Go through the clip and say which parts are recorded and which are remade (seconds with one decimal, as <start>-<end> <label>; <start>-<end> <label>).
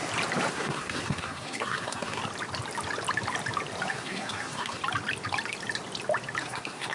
0.0-0.5 recorded; 0.5-2.2 remade; 2.2-3.9 recorded; 3.9-4.8 remade; 4.8-6.4 recorded; 6.4-6.9 remade